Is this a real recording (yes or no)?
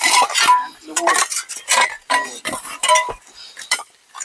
no